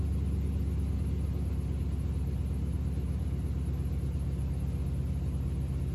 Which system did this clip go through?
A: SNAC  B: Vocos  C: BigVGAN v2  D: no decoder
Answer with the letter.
D